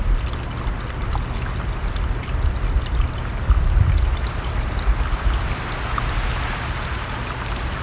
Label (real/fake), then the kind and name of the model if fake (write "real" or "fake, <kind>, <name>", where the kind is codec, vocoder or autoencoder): real